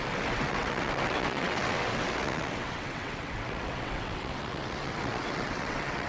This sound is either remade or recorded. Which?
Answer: remade